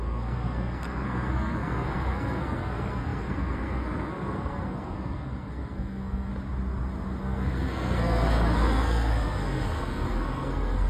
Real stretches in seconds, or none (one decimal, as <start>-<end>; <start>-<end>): 6.3-7.2